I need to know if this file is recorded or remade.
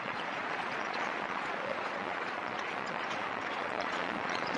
remade